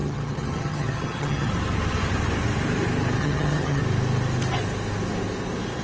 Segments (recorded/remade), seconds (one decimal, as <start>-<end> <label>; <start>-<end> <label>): 0.0-1.5 remade; 1.5-3.2 recorded; 3.2-3.8 remade; 3.8-5.8 recorded